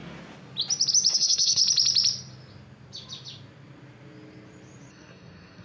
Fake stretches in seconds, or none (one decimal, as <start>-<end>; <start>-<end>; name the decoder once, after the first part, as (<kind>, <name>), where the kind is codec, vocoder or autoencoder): 1.1-1.6 (codec, SNAC); 4.9-5.6

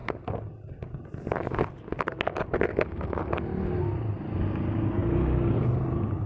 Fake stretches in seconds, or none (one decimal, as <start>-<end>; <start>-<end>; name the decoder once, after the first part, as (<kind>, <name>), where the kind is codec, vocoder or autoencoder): none

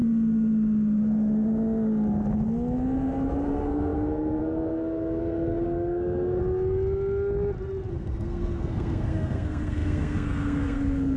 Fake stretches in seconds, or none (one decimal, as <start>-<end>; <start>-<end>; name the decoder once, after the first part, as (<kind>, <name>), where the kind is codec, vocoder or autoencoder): 3.4-6.4 (codec, SNAC); 7.9-11.2

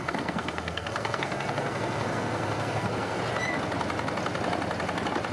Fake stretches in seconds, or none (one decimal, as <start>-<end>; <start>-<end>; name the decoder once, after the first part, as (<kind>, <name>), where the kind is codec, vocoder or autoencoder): 0.0-3.2 (codec, SNAC)